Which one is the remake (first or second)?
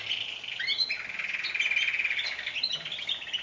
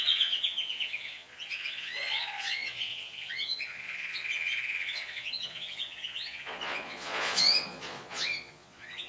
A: second